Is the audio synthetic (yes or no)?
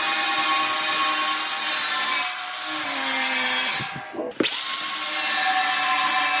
no